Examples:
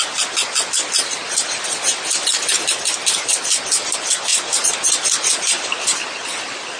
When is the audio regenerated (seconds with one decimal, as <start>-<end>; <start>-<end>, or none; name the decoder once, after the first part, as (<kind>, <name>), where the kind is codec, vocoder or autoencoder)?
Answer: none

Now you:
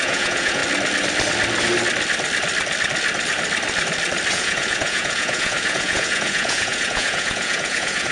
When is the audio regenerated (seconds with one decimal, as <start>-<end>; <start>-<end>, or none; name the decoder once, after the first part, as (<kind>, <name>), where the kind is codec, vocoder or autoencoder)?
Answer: 0.0-0.6 (vocoder, Vocos); 4.3-8.1

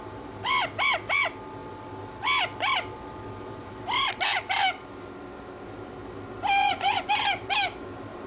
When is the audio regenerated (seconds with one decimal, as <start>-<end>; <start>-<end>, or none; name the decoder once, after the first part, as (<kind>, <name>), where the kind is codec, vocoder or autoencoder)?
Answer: 6.6-7.1 (vocoder, Vocos)